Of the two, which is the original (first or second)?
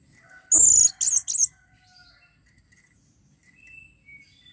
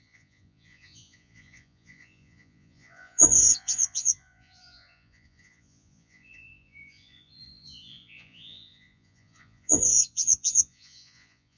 first